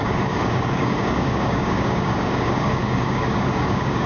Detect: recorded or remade remade